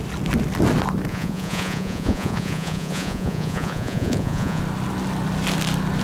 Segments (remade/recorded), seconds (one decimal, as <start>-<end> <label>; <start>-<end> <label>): 0.0-1.1 recorded; 1.1-4.6 remade; 4.6-6.0 recorded